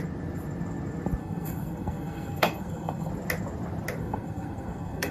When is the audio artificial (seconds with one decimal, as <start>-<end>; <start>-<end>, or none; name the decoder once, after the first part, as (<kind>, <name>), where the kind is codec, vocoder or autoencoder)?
1.2-3.1 (codec, SNAC); 4.0-5.1